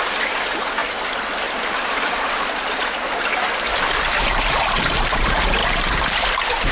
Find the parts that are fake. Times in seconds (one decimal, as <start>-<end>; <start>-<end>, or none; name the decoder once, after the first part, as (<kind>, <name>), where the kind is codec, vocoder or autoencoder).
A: 0.0-6.7 (vocoder, BigVGAN v2)